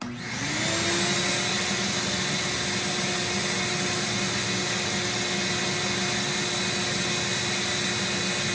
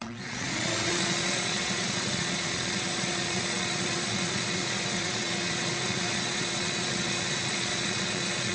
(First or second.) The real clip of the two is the first